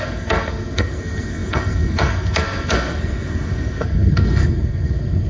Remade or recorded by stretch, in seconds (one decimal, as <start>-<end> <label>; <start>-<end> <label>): 0.0-5.3 remade